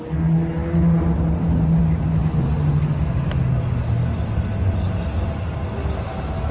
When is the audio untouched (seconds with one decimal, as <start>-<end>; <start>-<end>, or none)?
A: 0.0-6.5